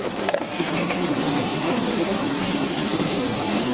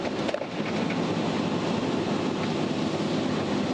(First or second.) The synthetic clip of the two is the first